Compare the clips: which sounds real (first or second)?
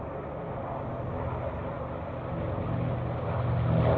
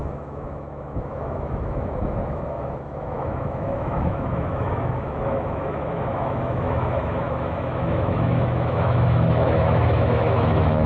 first